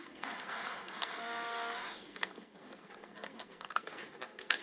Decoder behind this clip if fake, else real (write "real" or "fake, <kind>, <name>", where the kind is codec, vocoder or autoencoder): fake, codec, SNAC